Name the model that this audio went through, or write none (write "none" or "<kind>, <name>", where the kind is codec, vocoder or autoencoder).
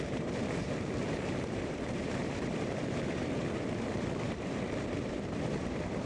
vocoder, BigVGAN v2